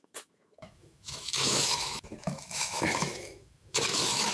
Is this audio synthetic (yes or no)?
yes